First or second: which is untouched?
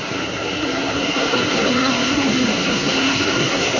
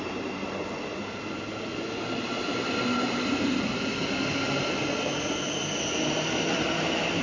second